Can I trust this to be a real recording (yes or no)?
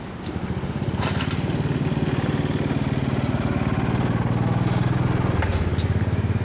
yes